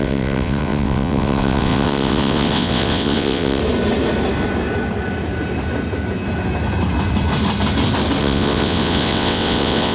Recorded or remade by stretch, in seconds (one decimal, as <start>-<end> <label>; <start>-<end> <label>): 0.0-3.6 remade; 3.6-8.2 recorded; 8.2-9.9 remade

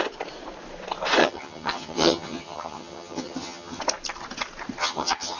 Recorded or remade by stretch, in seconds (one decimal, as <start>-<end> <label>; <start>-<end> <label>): 0.0-1.2 recorded; 1.2-3.8 remade; 3.8-4.8 recorded; 4.8-5.4 remade

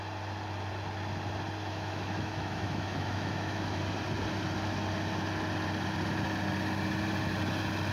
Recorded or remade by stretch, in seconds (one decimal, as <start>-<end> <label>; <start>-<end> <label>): 0.0-1.6 recorded; 1.6-3.8 remade; 3.8-7.9 recorded